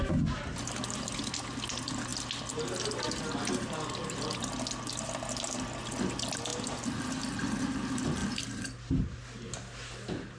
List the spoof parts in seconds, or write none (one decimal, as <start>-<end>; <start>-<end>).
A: none